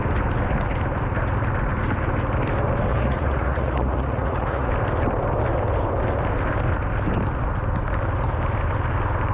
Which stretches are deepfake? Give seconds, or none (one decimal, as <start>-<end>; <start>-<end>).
2.9-4.7